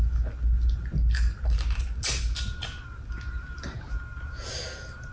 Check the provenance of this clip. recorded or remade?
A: recorded